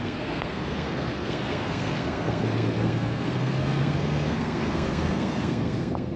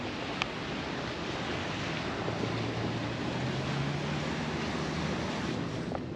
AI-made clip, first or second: first